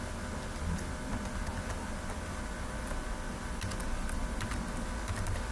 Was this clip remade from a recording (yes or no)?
no